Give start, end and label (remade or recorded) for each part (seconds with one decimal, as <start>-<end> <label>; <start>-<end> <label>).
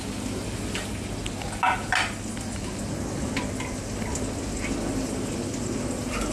0.0-6.3 recorded